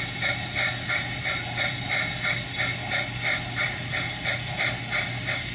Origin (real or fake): real